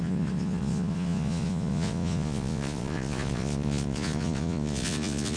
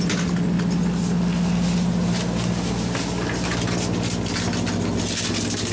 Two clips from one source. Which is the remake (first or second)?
first